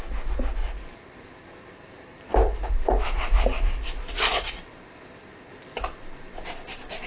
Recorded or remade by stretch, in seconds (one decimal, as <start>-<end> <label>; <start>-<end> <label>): 0.0-0.6 recorded; 0.6-4.8 remade; 4.8-7.1 recorded